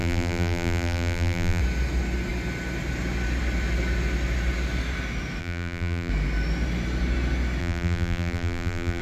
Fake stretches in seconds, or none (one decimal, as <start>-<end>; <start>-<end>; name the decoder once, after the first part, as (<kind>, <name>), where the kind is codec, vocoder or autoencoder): 0.0-1.6 (vocoder, BigVGAN v2); 5.4-6.1; 7.6-9.0